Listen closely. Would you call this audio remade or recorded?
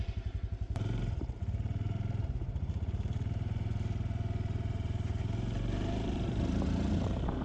remade